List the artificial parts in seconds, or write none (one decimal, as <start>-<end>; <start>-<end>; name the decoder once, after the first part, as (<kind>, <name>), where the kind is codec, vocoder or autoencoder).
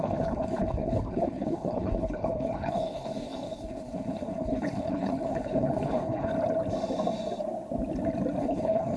0.0-6.3 (codec, HILCodec); 8.4-9.0